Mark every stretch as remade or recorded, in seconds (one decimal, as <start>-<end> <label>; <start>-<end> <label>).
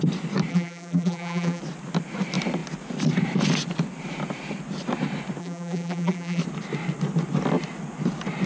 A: 0.0-0.5 recorded; 0.5-1.6 remade; 1.6-5.4 recorded; 5.4-6.4 remade; 6.4-8.5 recorded